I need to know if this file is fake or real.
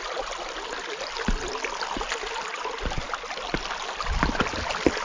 real